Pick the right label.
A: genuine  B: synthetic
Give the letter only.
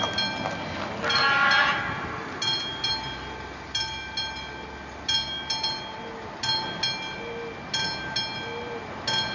A